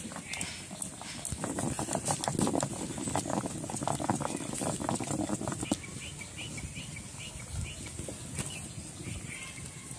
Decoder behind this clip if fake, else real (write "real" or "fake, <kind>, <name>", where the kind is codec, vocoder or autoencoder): real